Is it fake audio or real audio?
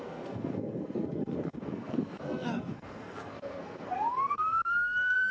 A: fake